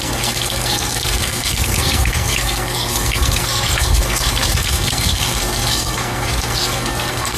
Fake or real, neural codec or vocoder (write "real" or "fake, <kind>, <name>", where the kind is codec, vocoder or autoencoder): fake, codec, SNAC